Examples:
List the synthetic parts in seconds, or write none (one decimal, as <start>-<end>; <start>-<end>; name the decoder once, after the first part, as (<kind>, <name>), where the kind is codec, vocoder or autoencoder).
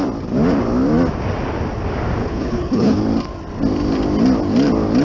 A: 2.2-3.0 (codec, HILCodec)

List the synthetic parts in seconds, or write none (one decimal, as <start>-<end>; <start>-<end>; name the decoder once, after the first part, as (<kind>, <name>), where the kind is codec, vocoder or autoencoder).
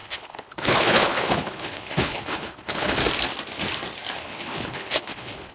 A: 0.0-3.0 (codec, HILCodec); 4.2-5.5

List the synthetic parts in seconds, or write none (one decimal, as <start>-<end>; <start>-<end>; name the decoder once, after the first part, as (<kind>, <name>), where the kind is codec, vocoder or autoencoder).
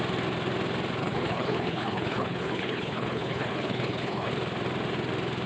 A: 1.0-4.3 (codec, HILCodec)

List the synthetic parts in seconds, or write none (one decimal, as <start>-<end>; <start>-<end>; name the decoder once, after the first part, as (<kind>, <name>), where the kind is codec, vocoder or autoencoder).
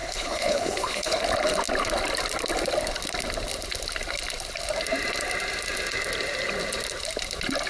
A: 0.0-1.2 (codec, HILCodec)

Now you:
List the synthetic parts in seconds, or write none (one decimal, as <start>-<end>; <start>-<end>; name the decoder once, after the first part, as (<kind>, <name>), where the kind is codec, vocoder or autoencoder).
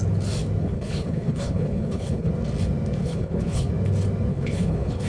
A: 0.6-2.3 (codec, HILCodec); 3.0-3.7; 4.3-5.1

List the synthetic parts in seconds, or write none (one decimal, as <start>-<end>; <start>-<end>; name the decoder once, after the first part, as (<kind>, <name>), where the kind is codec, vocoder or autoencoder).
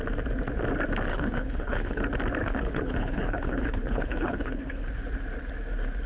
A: 1.1-2.0 (codec, HILCodec); 2.4-4.9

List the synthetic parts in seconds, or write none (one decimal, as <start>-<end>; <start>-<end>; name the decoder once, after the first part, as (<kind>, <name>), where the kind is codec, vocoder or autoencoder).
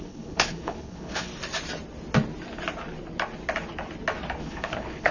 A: 0.0-1.3 (codec, HILCodec); 4.4-5.1